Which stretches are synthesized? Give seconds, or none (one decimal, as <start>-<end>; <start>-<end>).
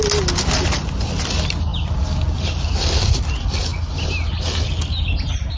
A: none